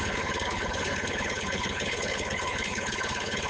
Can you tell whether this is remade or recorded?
remade